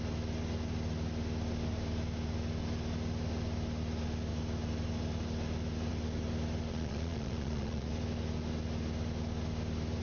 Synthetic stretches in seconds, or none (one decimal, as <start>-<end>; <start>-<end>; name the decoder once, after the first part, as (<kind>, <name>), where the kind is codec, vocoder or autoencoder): 6.7-7.9 (vocoder, Vocos)